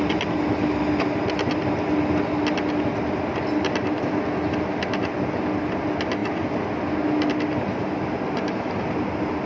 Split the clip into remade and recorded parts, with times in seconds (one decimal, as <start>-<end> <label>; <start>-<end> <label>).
0.0-9.5 recorded